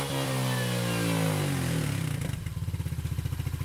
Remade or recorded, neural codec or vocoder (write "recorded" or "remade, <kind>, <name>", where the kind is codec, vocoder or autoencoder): recorded